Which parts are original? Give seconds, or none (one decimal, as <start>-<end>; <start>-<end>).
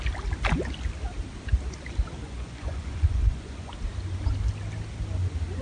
0.0-2.2; 3.7-5.6